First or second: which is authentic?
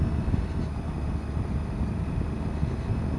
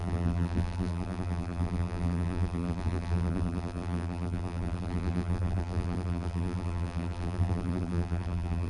first